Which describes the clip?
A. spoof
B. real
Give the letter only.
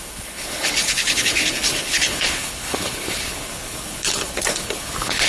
A